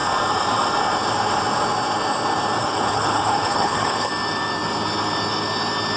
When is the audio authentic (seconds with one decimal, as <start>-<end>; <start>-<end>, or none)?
0.0-2.6; 4.1-6.0